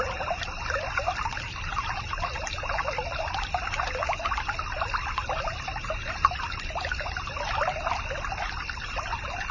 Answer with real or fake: real